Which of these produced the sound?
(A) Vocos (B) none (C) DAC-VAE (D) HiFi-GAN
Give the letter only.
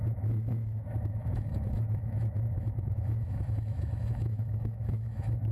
C